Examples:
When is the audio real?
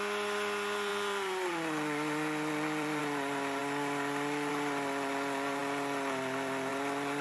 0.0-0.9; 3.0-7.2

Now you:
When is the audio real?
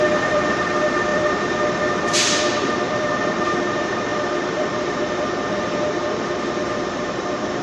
none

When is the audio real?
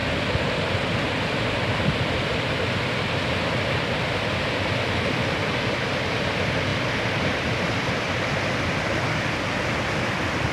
none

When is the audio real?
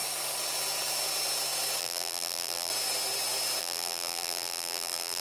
0.0-1.8; 2.7-3.6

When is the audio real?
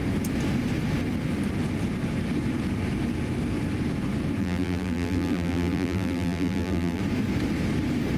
0.0-4.4; 7.0-8.2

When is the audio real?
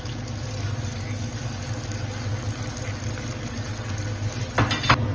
0.0-5.1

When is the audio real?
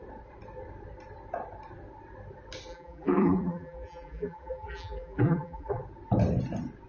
0.0-2.7; 5.8-6.9